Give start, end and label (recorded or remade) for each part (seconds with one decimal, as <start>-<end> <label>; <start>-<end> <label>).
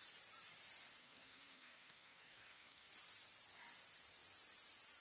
0.0-1.0 recorded; 1.0-2.9 remade; 2.9-5.0 recorded